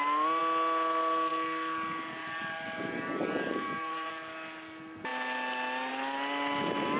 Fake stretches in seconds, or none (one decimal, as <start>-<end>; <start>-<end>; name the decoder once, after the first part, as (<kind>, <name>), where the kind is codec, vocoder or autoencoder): 2.2-4.1 (vocoder, BigVGAN v2)